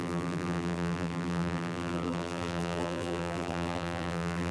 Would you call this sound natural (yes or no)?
no